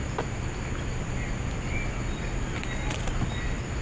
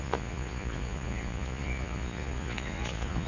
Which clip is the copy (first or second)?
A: second